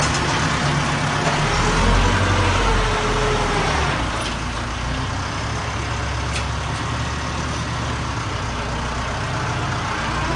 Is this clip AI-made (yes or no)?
no